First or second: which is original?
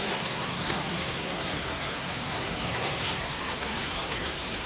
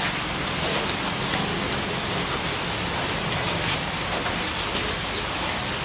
second